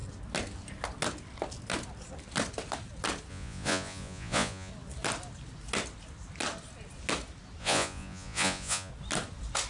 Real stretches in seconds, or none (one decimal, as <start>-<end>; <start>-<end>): 0.0-3.3; 4.7-7.6; 8.9-9.7